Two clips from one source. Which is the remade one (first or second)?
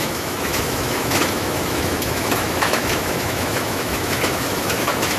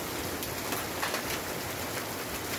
first